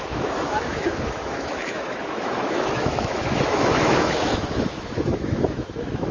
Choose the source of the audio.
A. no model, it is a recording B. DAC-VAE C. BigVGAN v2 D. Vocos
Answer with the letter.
B